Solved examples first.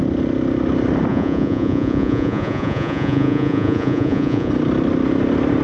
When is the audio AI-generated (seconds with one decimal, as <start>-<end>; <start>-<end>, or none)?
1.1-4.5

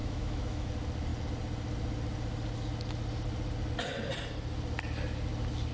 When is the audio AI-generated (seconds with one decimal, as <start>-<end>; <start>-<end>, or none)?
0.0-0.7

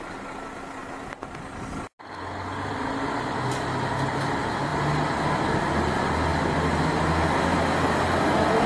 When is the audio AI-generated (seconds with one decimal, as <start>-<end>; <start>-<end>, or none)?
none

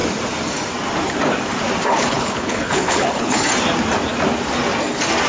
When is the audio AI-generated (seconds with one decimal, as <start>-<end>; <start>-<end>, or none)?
1.9-3.4

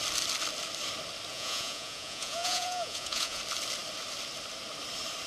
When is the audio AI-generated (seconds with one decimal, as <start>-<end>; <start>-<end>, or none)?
1.3-3.4

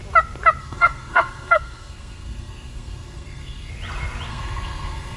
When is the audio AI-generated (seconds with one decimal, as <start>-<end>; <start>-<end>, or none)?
0.6-3.7; 4.3-5.2